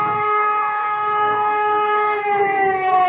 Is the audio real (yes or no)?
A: no